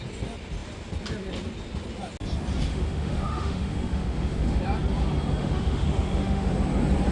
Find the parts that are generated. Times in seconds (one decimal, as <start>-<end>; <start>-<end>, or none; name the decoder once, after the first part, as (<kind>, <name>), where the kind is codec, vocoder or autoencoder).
2.7-4.6 (autoencoder, DAC-VAE); 5.4-6.5